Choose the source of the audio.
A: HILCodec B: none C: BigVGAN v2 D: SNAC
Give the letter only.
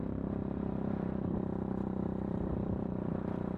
C